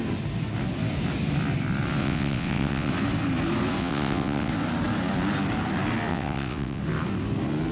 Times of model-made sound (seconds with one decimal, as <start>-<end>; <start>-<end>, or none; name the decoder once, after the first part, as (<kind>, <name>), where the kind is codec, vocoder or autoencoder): 2.0-2.9 (vocoder, WaveNeXt); 3.8-4.5; 6.1-6.8